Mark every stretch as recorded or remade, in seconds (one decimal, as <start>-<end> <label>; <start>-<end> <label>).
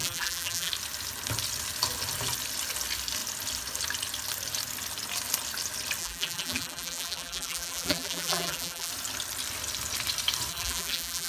0.0-0.7 remade; 0.7-6.0 recorded; 6.0-8.9 remade; 8.9-10.5 recorded; 10.5-11.3 remade